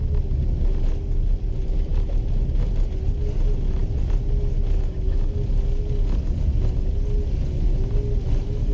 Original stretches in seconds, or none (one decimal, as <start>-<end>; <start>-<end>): 0.0-8.7